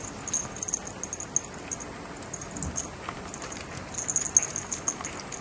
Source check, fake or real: real